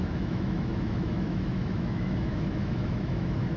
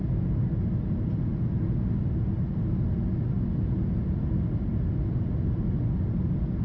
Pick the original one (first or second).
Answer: second